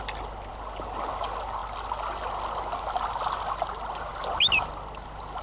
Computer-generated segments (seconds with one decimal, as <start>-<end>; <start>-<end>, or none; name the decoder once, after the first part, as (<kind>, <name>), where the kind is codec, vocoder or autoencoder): none